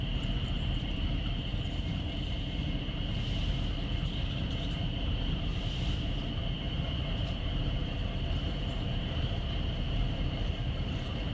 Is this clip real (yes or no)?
no